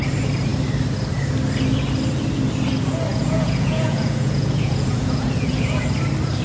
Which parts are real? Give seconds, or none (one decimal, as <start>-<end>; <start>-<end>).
0.0-3.1; 5.8-6.4